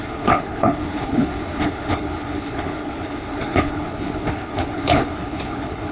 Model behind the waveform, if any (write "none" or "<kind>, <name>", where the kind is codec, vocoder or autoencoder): codec, HILCodec